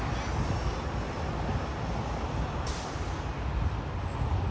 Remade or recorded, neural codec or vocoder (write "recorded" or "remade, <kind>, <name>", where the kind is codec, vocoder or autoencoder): recorded